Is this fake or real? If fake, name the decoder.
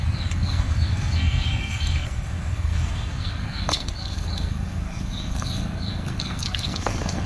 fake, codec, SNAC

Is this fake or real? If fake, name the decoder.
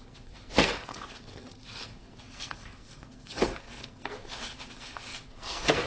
fake, codec, SNAC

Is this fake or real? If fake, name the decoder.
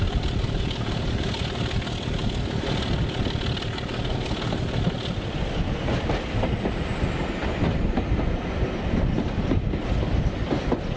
real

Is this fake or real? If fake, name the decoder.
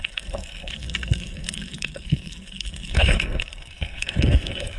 fake, codec, SNAC